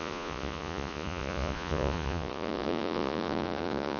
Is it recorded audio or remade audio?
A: remade